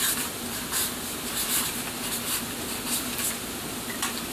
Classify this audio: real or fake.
real